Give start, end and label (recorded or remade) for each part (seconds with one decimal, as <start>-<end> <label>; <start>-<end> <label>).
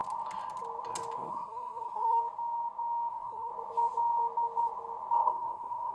0.0-1.3 recorded; 1.3-2.2 remade; 2.2-3.1 recorded; 3.1-3.5 remade; 3.5-5.3 recorded; 5.3-5.9 remade